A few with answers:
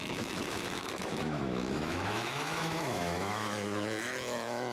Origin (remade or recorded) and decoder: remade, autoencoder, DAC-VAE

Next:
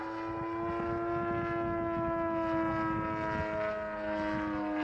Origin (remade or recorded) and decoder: recorded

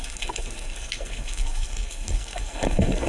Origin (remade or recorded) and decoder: remade, codec, SNAC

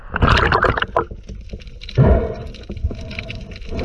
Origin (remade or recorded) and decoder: recorded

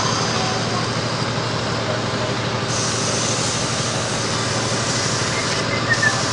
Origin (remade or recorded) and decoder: recorded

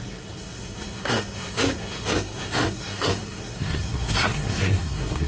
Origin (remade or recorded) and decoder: remade, codec, SNAC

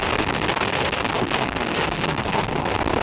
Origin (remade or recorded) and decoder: remade, codec, SNAC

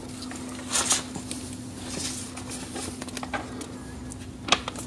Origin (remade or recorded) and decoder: recorded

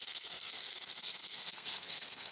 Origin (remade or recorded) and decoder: remade, codec, SNAC